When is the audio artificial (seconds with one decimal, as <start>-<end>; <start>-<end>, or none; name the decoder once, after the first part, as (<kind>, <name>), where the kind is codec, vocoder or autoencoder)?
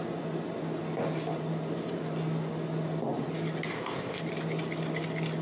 3.7-4.2 (codec, ZipCodec)